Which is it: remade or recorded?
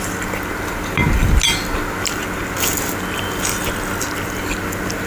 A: recorded